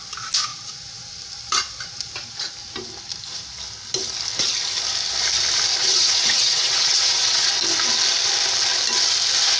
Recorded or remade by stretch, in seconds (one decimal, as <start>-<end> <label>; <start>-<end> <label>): 0.0-5.8 recorded; 5.8-7.5 remade; 7.5-9.6 recorded